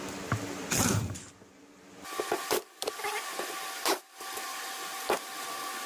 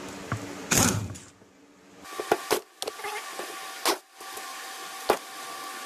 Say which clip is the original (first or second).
second